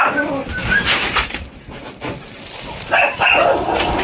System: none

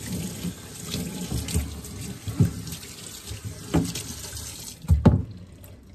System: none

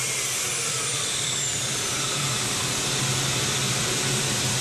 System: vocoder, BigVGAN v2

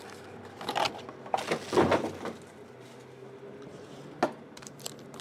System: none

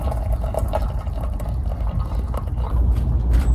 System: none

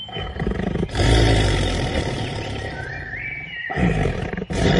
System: vocoder, BigVGAN v2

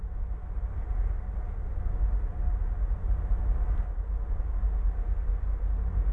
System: none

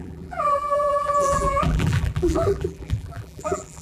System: vocoder, BigVGAN v2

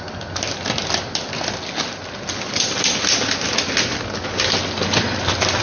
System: none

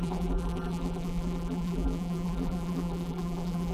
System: vocoder, BigVGAN v2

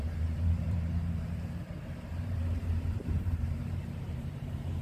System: vocoder, BigVGAN v2